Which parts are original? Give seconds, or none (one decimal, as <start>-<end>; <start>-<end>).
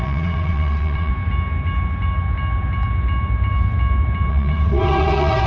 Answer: 1.1-4.3